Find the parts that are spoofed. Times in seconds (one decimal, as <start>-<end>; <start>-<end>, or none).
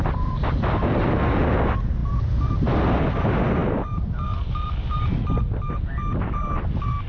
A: none